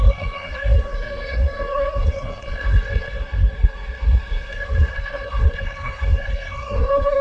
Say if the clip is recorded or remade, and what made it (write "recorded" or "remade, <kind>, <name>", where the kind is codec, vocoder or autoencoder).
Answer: remade, codec, SNAC